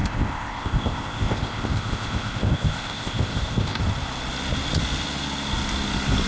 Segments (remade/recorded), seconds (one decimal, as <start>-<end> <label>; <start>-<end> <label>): 0.0-3.8 remade; 3.8-6.3 recorded